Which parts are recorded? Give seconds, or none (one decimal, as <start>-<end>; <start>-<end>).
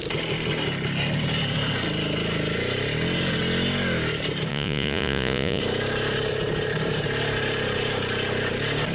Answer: 0.0-4.5; 5.6-8.9